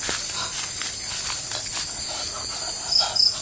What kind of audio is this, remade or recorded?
recorded